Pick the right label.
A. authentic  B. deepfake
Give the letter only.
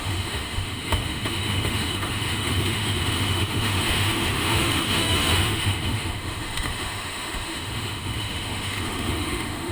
B